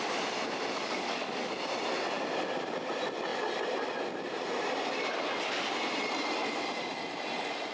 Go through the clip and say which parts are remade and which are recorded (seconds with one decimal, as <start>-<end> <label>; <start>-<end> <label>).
0.0-0.7 recorded; 0.7-1.5 remade; 1.5-7.7 recorded

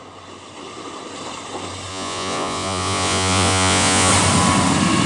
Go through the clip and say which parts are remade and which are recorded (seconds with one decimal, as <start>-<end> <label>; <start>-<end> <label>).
0.0-1.9 recorded; 1.9-4.1 remade; 4.1-5.1 recorded

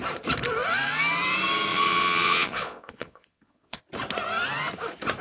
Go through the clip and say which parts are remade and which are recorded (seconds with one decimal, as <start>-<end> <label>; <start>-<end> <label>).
0.0-1.7 recorded; 1.7-3.8 remade; 3.8-5.2 recorded

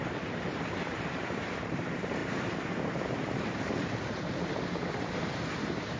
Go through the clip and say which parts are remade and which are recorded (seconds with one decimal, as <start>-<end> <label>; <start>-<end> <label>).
0.0-6.0 remade

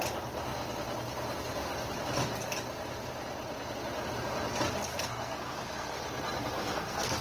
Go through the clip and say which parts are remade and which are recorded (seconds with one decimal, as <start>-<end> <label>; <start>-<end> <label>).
0.0-4.9 recorded; 4.9-6.0 remade; 6.0-6.6 recorded; 6.6-7.2 remade

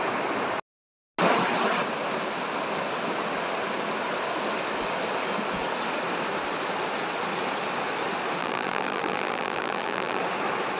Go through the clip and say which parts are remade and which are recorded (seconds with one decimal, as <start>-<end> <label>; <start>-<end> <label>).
0.0-8.4 recorded; 8.4-10.2 remade; 10.2-10.8 recorded